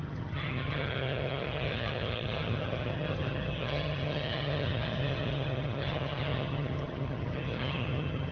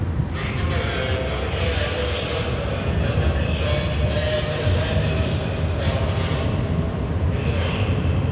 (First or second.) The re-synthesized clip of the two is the first